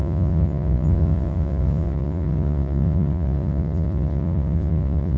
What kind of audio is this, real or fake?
fake